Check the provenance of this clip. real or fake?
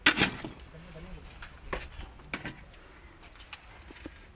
real